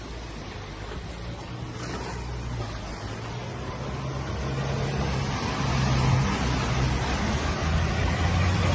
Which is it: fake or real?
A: real